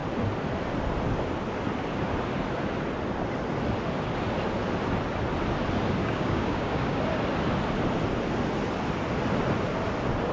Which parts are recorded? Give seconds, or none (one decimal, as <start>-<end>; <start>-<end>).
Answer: 0.0-6.0; 7.0-10.3